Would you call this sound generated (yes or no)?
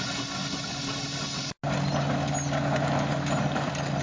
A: no